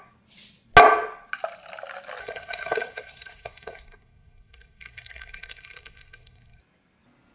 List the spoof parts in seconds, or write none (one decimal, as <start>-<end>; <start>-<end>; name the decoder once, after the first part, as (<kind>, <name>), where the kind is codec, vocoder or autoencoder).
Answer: 2.2-6.6 (codec, SNAC)